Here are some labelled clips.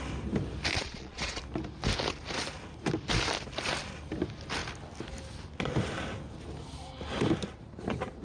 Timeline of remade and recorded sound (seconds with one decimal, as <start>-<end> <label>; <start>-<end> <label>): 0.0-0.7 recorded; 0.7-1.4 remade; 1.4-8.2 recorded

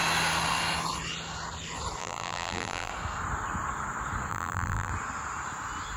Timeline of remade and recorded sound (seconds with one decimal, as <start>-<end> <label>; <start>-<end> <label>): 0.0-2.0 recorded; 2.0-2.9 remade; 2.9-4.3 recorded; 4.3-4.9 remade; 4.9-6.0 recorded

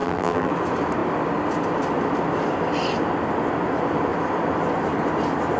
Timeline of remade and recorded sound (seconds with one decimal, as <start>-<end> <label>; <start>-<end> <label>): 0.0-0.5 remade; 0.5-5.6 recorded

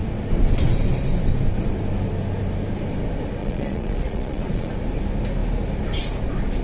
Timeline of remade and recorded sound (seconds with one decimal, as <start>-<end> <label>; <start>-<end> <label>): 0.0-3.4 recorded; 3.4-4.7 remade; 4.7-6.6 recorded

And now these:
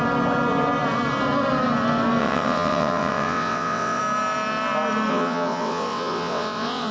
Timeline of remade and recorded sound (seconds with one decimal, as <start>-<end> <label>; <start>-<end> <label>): 0.0-2.2 recorded; 2.2-4.0 remade; 4.0-5.1 recorded; 5.1-6.9 remade

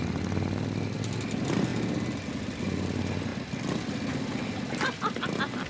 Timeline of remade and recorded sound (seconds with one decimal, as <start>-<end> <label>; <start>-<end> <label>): 0.0-5.7 recorded